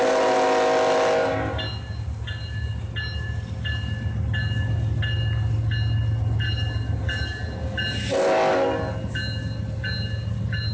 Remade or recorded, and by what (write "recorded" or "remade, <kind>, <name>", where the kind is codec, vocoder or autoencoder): recorded